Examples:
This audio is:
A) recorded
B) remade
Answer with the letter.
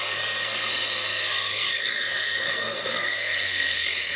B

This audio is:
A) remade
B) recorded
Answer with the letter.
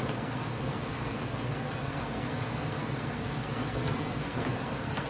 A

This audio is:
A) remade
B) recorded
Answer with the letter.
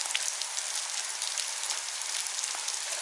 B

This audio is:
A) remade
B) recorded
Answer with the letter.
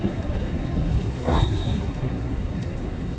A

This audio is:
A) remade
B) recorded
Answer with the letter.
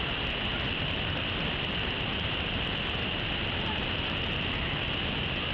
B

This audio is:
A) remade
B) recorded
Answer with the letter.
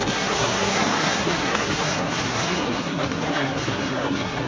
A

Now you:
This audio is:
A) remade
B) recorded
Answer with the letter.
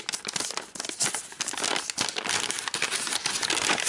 B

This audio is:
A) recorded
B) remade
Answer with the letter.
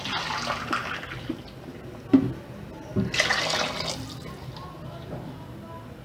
A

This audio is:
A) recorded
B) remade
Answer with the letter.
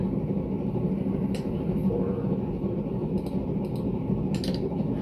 A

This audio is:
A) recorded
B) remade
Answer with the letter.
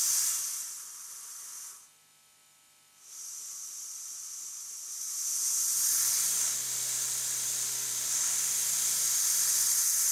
A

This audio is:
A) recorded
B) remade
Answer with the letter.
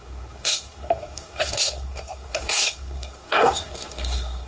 B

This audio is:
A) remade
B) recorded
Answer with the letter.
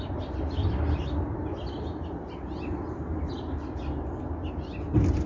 B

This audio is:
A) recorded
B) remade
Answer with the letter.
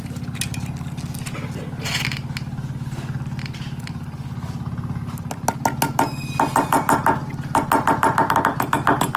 A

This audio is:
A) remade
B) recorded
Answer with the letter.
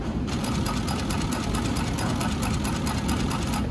B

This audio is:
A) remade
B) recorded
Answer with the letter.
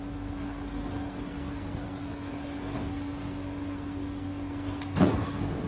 A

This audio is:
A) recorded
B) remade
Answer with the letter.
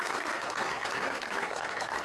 B